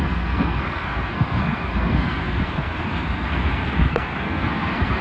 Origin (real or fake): fake